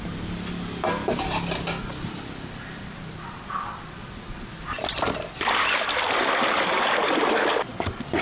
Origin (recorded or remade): recorded